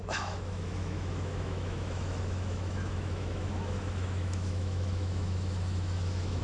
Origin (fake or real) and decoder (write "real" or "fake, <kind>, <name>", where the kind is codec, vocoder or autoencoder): fake, autoencoder, DAC-VAE